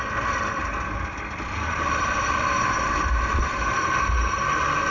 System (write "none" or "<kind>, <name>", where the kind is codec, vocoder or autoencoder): none